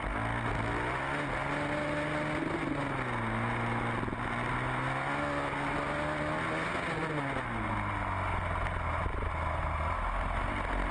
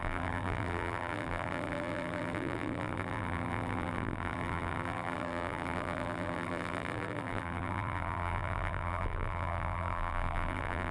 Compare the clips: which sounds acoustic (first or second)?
first